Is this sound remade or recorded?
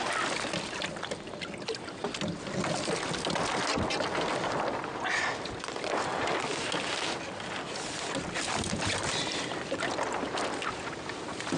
recorded